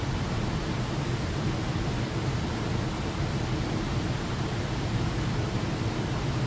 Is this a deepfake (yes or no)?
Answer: no